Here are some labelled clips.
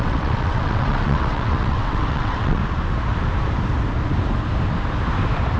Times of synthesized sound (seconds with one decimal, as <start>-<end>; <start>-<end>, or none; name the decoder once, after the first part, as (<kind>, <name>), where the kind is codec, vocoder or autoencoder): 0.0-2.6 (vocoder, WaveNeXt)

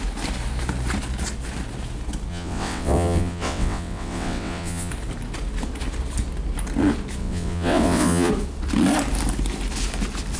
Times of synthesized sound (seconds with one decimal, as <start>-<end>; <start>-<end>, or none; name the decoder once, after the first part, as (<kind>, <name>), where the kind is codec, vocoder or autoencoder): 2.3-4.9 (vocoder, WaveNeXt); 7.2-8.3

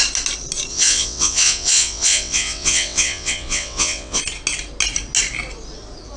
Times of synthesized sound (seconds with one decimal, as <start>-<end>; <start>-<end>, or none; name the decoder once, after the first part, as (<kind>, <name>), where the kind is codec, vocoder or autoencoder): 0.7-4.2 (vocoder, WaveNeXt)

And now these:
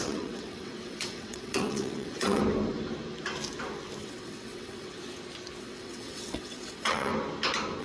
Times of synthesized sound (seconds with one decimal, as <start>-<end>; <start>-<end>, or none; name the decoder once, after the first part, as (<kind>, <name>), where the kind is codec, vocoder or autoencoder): 0.0-2.4 (vocoder, WaveNeXt); 4.0-5.0; 5.6-7.1